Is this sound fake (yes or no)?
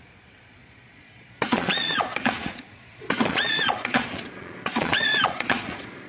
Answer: yes